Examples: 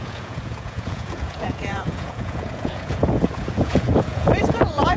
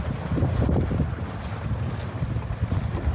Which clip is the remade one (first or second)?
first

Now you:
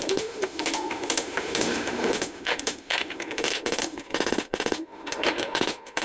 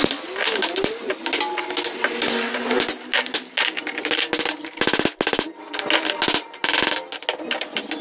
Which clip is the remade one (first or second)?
first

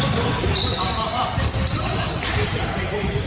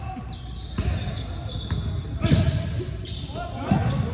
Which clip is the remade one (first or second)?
first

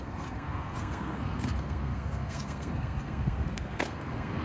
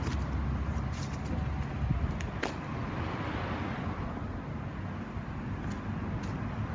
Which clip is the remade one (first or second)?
first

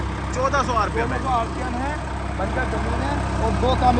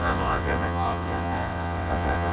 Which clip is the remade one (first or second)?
second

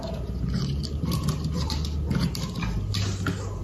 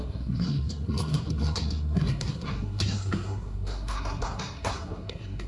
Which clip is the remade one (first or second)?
second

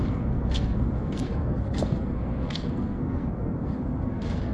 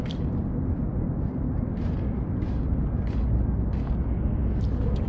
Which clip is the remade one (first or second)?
first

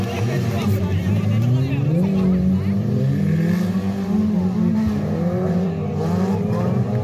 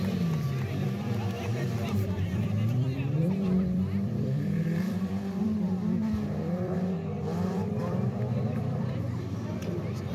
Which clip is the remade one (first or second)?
second